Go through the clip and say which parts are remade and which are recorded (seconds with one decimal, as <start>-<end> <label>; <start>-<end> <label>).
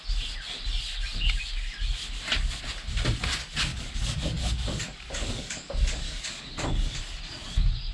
0.0-3.7 recorded; 3.7-7.0 remade; 7.0-7.9 recorded